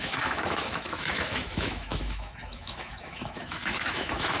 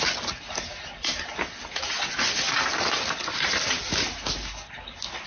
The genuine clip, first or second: second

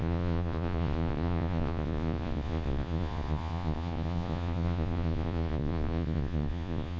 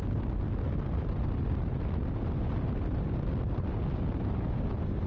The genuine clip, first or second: second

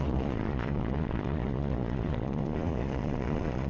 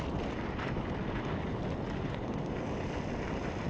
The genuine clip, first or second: second